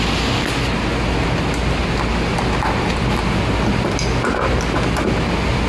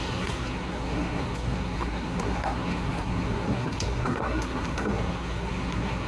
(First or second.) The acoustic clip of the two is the first